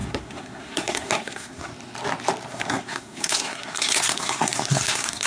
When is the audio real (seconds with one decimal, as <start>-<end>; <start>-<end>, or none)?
1.7-2.5